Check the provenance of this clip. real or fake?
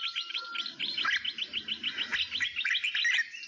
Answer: real